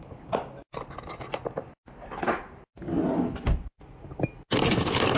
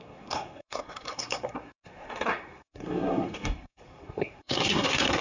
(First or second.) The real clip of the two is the first